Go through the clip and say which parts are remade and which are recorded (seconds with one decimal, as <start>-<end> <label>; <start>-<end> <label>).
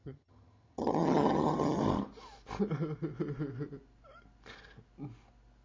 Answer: 0.0-1.8 remade; 1.8-5.6 recorded